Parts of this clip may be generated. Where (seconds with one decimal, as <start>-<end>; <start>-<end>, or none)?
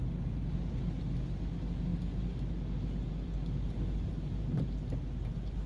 none